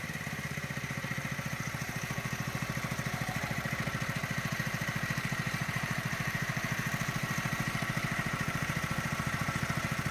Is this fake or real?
fake